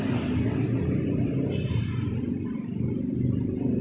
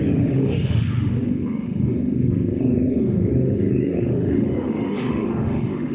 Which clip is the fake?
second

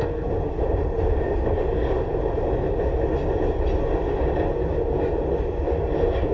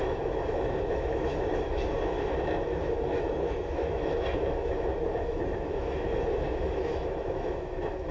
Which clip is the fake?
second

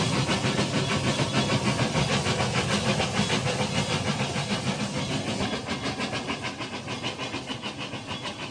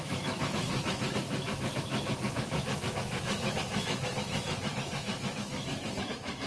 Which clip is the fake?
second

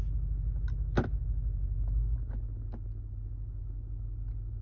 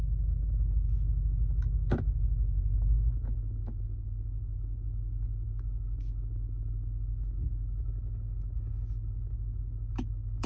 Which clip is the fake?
second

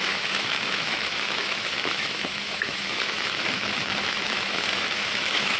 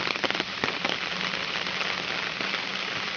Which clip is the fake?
first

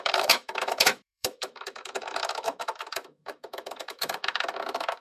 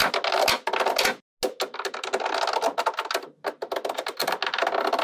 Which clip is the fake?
first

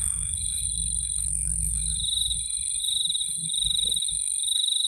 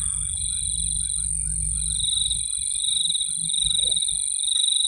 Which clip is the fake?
first